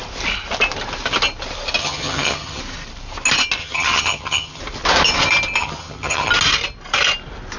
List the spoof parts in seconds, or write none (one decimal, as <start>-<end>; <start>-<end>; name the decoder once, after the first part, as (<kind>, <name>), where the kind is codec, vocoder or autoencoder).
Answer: 1.8-2.6 (vocoder, HiFi-GAN); 3.6-4.6; 5.6-6.3

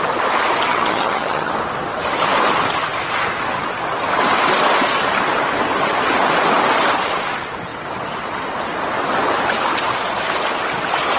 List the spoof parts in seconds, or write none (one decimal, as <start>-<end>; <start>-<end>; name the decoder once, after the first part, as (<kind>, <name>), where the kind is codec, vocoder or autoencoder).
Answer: 0.7-1.5 (vocoder, HiFi-GAN)

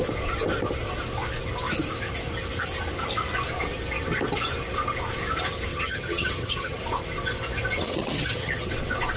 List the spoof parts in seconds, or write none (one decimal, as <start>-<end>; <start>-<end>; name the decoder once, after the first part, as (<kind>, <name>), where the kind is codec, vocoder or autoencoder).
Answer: 5.7-6.8 (vocoder, HiFi-GAN); 7.9-8.7